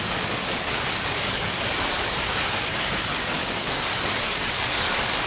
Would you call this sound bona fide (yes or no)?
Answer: no